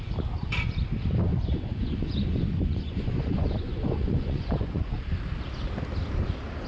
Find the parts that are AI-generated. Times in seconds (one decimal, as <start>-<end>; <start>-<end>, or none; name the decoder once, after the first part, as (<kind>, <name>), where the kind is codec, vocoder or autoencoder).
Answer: 1.3-4.9 (vocoder, Vocos)